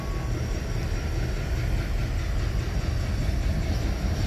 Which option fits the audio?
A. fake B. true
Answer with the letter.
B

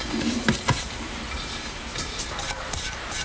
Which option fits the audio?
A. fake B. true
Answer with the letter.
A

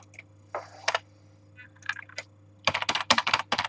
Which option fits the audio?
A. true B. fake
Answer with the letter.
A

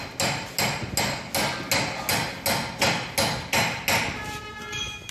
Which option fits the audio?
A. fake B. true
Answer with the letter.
B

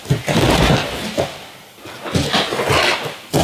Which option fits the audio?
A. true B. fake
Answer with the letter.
A